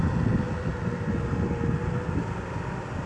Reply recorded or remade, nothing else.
recorded